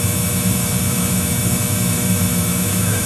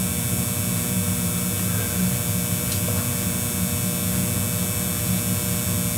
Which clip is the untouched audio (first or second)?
second